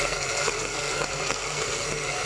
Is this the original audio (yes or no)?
no